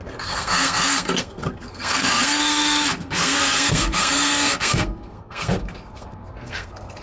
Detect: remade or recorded remade